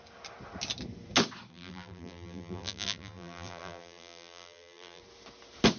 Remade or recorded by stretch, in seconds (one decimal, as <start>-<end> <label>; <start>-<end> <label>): 0.0-1.5 recorded; 1.5-5.0 remade; 5.0-5.8 recorded